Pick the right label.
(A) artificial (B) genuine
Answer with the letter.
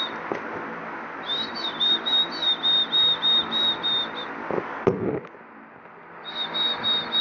B